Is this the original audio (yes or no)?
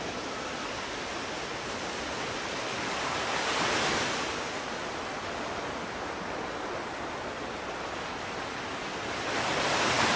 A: yes